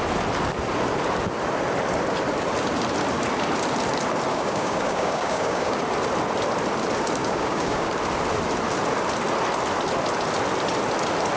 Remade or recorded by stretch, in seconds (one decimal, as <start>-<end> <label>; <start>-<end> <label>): 0.0-4.3 recorded; 4.3-5.8 remade; 5.8-7.2 recorded; 7.2-7.9 remade; 7.9-11.4 recorded